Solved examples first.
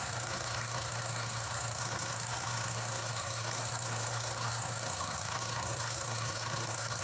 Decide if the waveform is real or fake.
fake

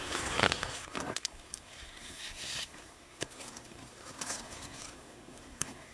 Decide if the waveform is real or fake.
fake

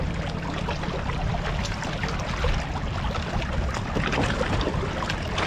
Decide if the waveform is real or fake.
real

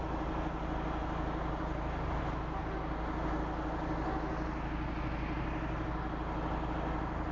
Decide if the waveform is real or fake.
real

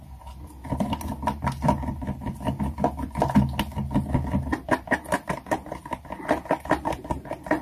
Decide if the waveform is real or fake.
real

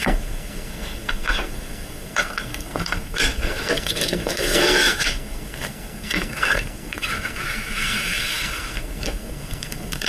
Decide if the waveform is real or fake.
fake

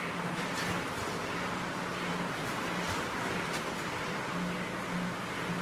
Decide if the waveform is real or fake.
real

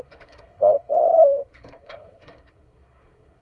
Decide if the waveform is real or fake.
fake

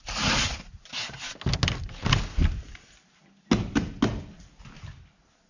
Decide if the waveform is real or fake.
real